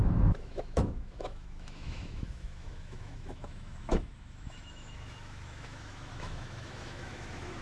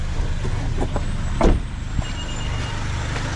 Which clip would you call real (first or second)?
second